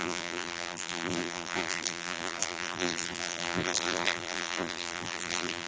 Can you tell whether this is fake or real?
fake